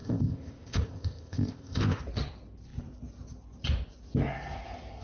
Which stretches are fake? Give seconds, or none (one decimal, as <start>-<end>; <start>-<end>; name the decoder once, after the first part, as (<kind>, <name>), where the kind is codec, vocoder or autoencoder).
0.0-2.0 (codec, ZipCodec)